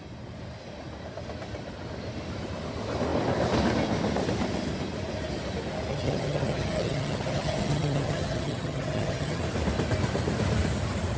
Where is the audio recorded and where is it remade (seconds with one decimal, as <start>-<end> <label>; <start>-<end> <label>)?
0.0-5.9 recorded; 5.9-9.4 remade; 9.4-11.2 recorded